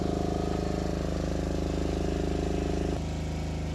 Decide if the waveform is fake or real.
real